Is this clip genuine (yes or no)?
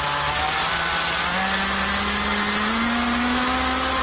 yes